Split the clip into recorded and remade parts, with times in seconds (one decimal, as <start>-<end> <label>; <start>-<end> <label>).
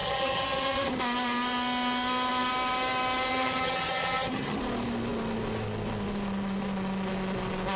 0.0-1.0 remade; 1.0-3.3 recorded; 3.3-4.6 remade; 4.6-7.8 recorded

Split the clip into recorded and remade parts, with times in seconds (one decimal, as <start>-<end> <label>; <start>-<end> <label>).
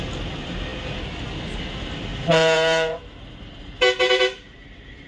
0.0-2.1 recorded; 2.1-5.1 remade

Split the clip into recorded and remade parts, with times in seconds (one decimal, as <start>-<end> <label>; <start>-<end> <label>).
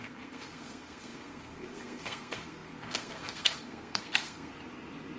0.0-4.5 remade; 4.5-5.2 recorded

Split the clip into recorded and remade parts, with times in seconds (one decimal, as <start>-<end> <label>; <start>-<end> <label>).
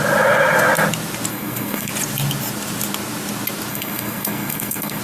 0.0-1.3 recorded; 1.3-1.9 remade; 1.9-3.7 recorded; 3.7-5.0 remade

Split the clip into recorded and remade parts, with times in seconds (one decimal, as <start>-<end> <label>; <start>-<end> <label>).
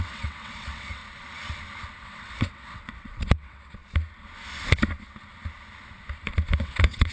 0.0-1.0 remade; 1.0-2.0 recorded; 2.0-3.8 remade; 3.8-6.6 recorded; 6.6-7.1 remade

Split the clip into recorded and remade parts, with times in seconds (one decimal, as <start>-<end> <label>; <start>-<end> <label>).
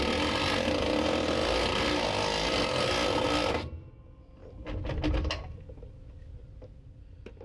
0.0-7.4 recorded